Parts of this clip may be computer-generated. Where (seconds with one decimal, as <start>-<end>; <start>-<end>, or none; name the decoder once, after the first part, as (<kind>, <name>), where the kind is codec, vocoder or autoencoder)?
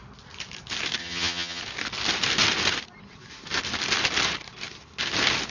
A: 1.0-1.6 (vocoder, HiFi-GAN)